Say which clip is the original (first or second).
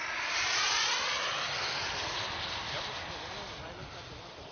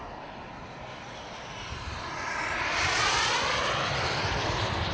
first